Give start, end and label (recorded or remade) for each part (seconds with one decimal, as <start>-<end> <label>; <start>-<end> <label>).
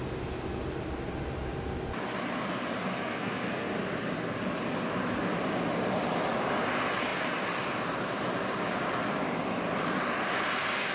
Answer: 0.0-3.0 recorded; 3.0-3.7 remade; 3.7-10.9 recorded